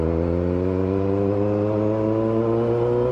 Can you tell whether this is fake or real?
real